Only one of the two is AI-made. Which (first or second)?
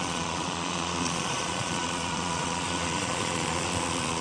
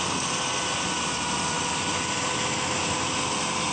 first